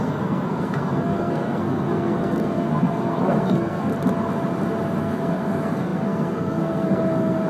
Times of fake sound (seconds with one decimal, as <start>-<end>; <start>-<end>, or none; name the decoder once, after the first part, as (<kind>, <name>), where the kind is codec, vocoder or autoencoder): 0.0-3.9 (codec, SNAC); 5.0-7.5